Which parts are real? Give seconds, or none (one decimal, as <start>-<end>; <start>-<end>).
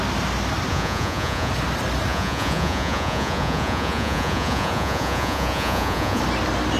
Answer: 0.0-0.7; 1.5-2.1; 6.2-6.8